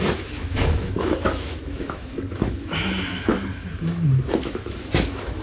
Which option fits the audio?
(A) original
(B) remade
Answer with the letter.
B